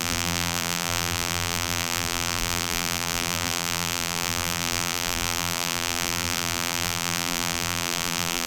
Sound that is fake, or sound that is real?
fake